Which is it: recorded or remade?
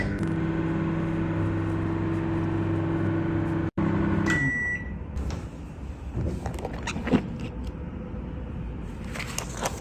recorded